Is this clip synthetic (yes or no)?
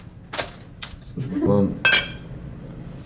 no